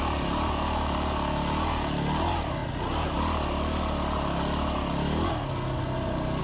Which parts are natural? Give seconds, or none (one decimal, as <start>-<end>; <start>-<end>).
0.0-6.4